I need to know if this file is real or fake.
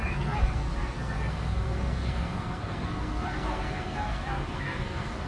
fake